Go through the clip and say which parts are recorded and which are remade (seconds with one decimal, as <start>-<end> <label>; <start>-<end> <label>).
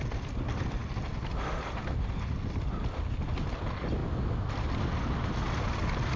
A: 0.0-6.2 recorded